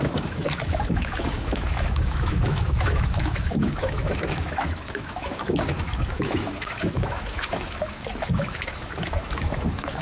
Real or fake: fake